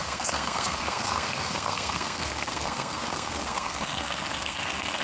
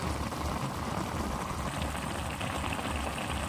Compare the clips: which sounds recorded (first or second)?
second